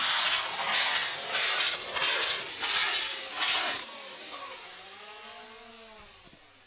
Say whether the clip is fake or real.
real